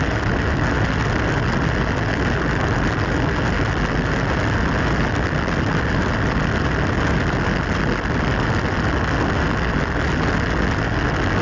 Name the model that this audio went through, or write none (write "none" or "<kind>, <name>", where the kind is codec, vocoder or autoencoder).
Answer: none